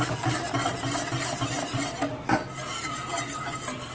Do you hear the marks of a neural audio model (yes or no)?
no